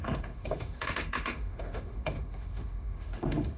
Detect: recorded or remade remade